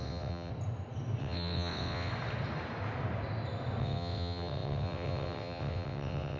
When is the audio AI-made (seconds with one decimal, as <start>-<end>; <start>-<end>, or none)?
0.0-0.5; 1.2-2.1; 3.8-6.4